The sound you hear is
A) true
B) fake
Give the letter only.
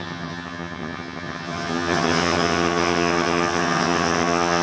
B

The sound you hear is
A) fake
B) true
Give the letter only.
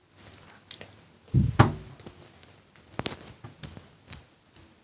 B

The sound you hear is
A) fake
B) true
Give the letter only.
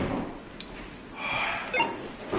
B